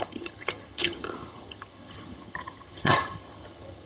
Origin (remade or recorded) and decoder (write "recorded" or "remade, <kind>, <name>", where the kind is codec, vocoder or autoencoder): remade, vocoder, HiFi-GAN